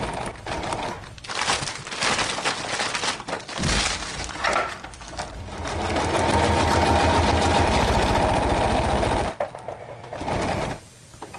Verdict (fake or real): real